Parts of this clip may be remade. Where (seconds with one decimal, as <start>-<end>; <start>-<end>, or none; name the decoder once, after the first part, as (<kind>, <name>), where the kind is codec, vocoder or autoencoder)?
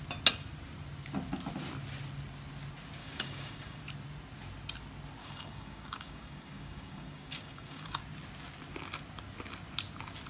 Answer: 3.0-3.8 (codec, DAC); 5.2-8.0